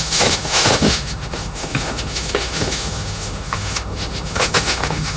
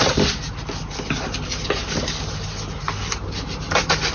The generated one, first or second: first